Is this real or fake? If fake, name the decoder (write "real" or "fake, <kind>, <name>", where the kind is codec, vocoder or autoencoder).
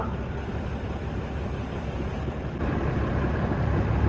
fake, vocoder, BigVGAN v2